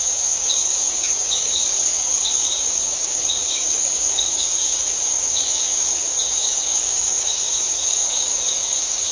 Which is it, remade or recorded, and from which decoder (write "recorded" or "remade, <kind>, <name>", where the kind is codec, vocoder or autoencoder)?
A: remade, codec, DAC